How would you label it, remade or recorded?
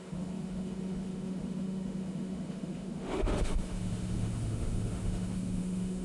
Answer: remade